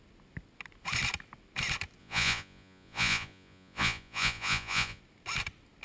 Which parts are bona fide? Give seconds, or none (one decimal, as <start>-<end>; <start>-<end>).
0.0-2.0; 5.0-5.8